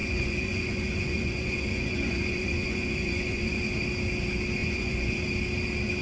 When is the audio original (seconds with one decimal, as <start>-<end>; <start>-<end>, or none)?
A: 3.6-4.6; 5.2-6.0